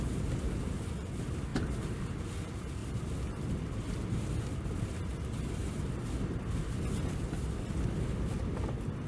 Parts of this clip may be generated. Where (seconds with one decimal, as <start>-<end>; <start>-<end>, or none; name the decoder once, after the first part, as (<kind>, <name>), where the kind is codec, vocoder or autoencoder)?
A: none